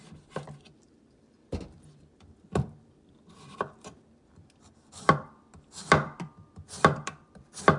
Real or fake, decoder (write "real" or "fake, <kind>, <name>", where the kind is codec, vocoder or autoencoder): fake, vocoder, BigVGAN v2